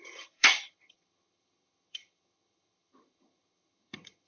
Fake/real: fake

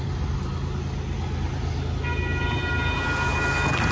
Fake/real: real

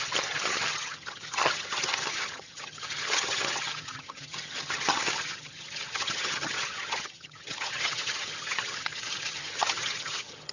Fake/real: fake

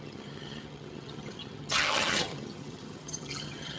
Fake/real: fake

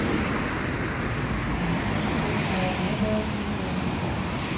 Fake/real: real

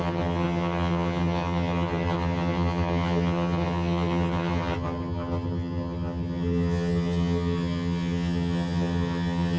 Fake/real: fake